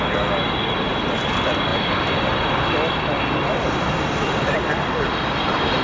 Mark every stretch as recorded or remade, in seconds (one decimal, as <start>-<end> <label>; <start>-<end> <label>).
0.0-5.8 recorded